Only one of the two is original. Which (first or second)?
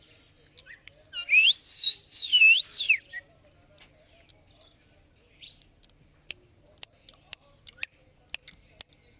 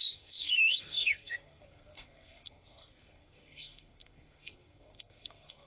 first